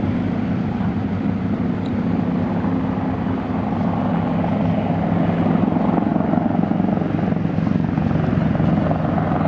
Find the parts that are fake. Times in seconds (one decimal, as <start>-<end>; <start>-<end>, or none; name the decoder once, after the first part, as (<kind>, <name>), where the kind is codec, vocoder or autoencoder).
none